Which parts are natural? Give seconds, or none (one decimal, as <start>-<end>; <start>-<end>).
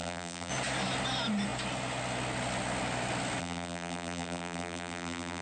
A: 0.5-3.4